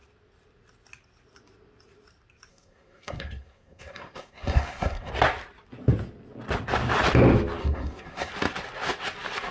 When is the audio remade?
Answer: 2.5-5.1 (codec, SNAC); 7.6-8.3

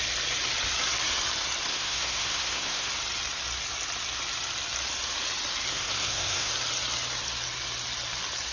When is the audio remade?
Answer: 1.7-2.9 (codec, SNAC); 5.7-6.5

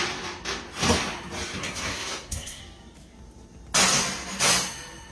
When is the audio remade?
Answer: 1.6-2.6 (codec, SNAC)